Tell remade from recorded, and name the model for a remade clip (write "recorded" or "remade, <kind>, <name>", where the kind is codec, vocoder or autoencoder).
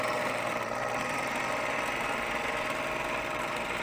recorded